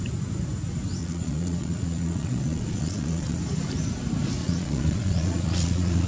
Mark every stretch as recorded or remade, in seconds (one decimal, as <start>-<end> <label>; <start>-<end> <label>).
0.0-1.0 recorded; 1.0-3.4 remade; 3.4-4.4 recorded; 4.4-6.1 remade

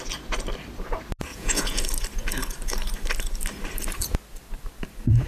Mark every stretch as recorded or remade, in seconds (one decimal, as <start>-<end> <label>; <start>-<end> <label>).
0.0-1.3 recorded; 1.3-1.8 remade; 1.8-5.3 recorded